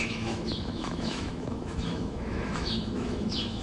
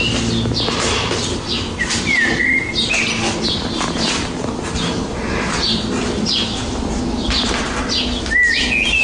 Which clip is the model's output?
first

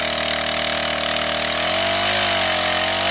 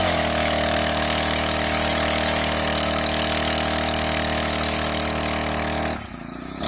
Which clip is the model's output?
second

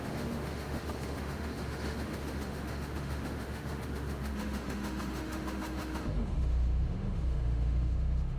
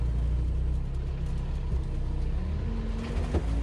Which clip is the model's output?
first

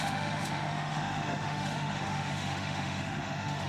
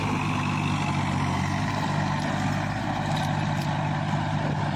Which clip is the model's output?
first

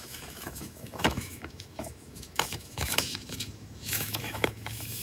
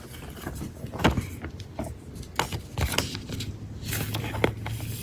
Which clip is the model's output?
first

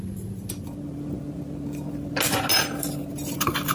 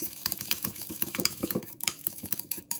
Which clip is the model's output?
second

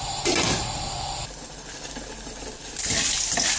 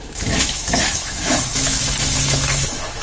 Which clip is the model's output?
second